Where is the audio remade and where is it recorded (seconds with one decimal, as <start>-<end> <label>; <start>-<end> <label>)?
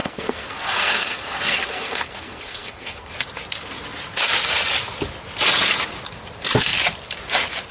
0.0-3.1 remade; 3.1-7.7 recorded